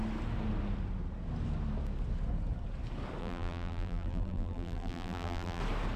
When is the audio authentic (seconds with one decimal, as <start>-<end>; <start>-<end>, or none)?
0.0-3.2; 5.6-6.0